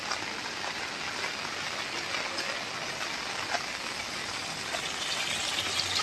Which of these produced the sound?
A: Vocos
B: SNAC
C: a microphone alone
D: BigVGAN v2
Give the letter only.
C